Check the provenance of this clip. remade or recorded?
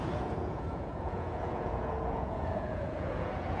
remade